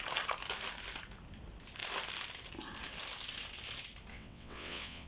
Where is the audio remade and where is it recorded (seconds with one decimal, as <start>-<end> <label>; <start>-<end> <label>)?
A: 0.0-4.1 recorded; 4.1-5.1 remade